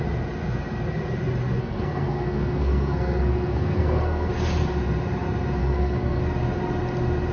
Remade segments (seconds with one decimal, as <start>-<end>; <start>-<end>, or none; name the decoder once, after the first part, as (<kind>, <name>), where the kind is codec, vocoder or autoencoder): 1.6-4.3 (codec, SNAC); 5.6-6.2